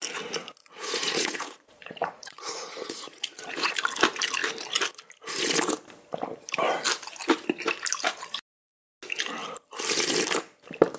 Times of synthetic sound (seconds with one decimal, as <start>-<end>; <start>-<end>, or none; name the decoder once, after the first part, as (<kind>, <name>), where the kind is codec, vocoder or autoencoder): 0.6-3.7 (vocoder, Vocos)